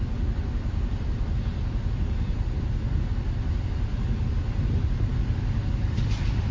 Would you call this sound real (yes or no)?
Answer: yes